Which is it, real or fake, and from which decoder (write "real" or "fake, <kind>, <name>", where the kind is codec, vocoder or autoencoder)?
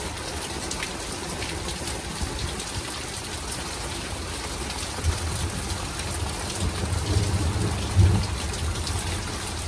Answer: real